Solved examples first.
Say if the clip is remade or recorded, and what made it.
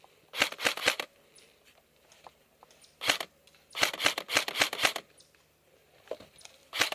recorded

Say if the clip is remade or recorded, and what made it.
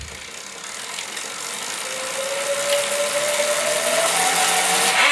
recorded